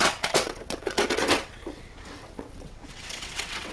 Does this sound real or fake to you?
fake